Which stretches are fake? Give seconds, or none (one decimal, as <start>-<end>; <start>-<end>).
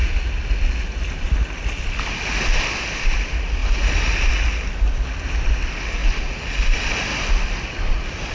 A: none